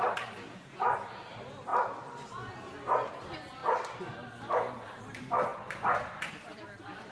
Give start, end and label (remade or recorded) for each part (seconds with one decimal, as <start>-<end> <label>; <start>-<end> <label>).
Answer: 0.0-7.1 recorded